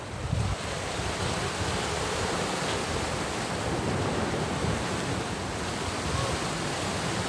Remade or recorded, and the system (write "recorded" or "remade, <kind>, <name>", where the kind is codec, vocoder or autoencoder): recorded